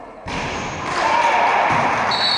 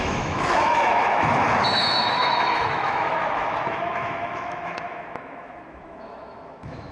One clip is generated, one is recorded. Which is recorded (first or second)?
first